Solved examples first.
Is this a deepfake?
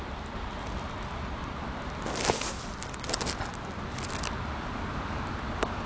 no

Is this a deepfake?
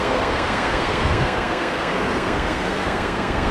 yes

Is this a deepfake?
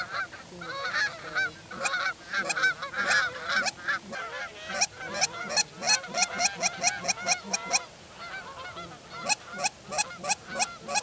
no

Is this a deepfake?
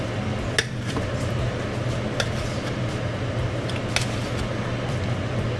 no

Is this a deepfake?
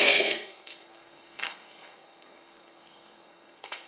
yes